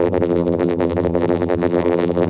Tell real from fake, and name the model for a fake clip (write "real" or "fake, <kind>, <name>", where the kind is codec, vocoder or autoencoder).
fake, vocoder, BigVGAN v2